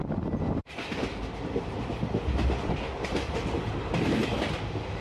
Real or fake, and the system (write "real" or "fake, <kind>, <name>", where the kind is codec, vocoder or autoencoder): real